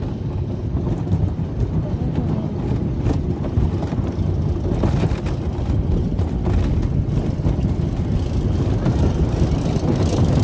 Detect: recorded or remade recorded